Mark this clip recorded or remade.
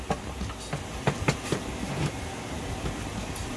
remade